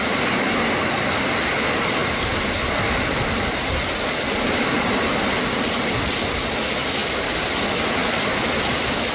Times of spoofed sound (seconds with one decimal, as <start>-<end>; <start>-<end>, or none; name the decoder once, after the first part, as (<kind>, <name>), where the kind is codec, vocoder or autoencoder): none